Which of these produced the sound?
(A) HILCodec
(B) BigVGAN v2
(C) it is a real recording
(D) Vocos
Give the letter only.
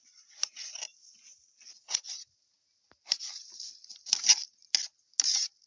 C